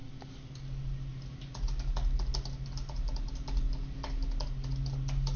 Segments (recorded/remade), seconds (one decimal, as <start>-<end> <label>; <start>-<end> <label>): 0.0-5.4 recorded

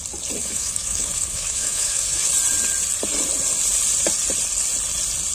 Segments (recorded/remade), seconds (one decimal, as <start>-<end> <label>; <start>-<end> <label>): 0.0-0.4 recorded; 0.4-2.3 remade; 2.3-5.3 recorded